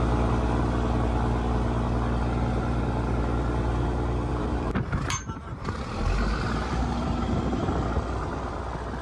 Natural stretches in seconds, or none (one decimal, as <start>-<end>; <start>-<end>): 0.0-4.3; 7.7-9.0